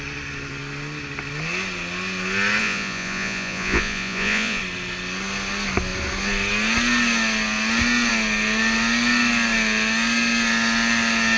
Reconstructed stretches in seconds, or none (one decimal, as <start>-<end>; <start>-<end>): 2.6-4.6